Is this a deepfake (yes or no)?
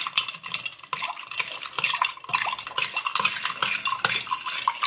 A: no